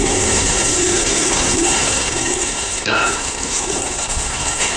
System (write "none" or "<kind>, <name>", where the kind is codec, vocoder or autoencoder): codec, SNAC